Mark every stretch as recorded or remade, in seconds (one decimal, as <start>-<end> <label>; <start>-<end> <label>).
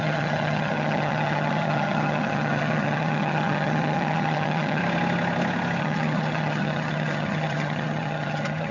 0.0-4.8 remade; 4.8-5.8 recorded; 5.8-8.7 remade